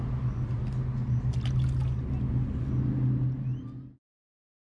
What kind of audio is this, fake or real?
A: real